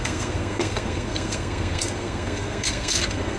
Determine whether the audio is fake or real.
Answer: fake